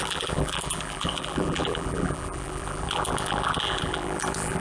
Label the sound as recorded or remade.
remade